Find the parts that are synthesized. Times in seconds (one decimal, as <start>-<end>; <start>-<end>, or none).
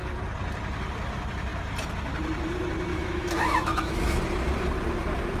2.9-4.2